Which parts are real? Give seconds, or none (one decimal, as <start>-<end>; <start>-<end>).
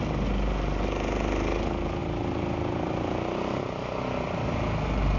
0.0-5.2